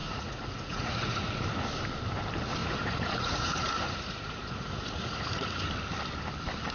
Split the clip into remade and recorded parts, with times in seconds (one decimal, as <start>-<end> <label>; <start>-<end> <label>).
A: 0.0-1.4 remade; 1.4-2.6 recorded; 2.6-5.7 remade; 5.7-6.7 recorded